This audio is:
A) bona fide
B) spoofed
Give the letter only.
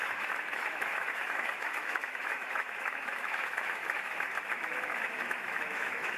B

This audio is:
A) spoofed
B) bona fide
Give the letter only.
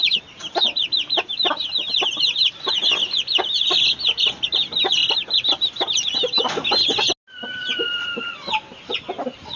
B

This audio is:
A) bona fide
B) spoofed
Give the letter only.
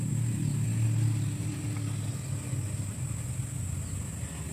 A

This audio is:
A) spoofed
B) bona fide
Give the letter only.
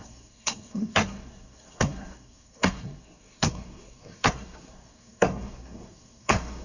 A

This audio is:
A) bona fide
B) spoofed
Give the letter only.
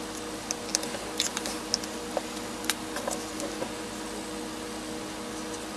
A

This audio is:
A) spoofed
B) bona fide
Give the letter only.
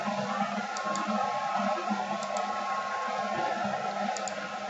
B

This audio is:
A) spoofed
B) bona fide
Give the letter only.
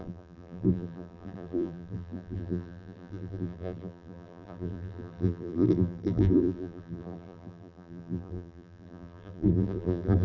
A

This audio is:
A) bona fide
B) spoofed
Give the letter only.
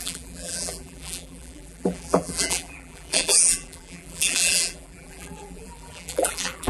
B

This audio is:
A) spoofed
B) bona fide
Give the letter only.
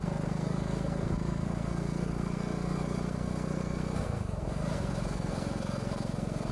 A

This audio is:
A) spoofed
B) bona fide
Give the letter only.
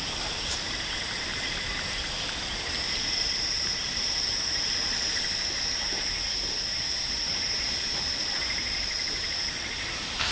A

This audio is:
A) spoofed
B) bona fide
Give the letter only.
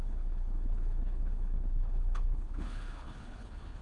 A